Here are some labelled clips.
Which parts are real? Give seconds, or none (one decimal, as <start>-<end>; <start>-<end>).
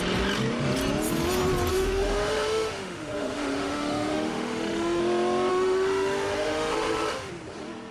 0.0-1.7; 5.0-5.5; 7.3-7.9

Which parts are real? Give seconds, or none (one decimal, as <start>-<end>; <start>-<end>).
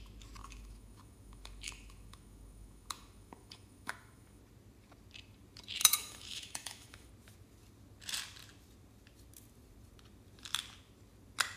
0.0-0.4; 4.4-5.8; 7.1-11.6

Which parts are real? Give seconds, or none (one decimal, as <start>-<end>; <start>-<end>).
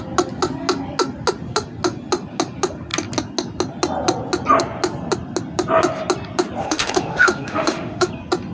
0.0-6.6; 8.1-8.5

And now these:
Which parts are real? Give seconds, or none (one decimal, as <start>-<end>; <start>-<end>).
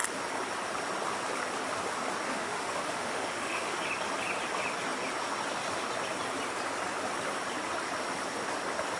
0.0-2.3; 3.8-9.0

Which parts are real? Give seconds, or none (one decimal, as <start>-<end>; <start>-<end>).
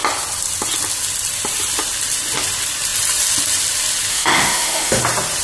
0.0-4.1; 5.0-5.4